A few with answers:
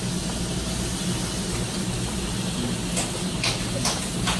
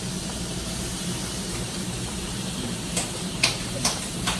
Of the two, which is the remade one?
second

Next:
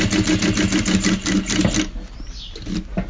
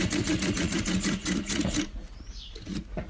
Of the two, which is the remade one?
second